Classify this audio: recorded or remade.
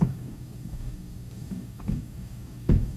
remade